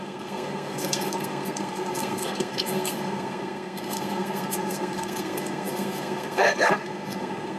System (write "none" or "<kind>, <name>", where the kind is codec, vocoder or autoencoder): codec, SNAC